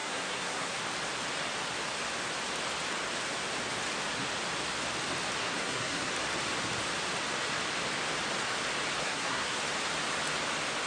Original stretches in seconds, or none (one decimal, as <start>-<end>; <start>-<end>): 0.8-5.4; 6.1-9.0; 9.6-10.9